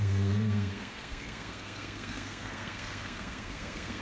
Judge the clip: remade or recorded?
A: remade